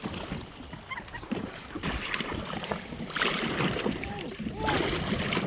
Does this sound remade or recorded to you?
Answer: remade